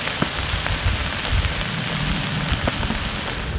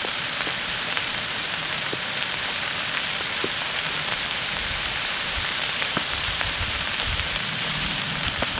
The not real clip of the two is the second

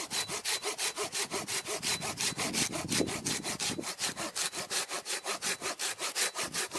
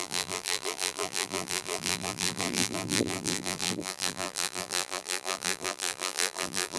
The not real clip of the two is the second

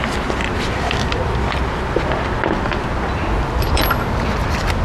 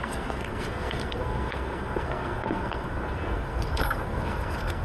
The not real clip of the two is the second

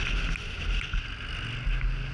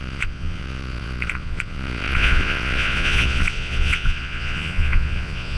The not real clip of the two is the second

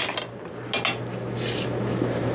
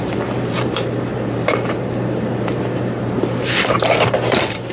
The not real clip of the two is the second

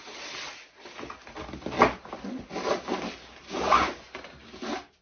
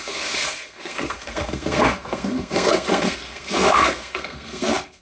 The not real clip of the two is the second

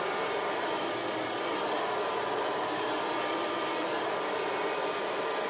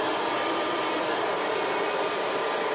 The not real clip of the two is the second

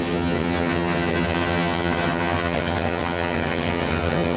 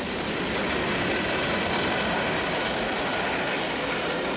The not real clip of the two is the first